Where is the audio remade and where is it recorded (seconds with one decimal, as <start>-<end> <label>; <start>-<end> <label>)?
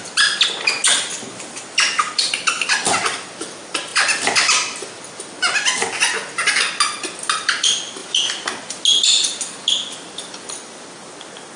0.0-11.6 recorded